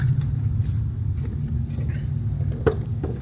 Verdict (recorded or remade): recorded